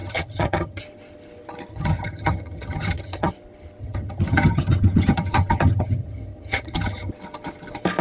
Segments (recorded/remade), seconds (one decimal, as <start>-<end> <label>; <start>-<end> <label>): 0.0-0.8 remade; 0.8-1.7 recorded; 1.7-3.3 remade; 3.3-3.8 recorded; 3.8-7.1 remade; 7.1-8.0 recorded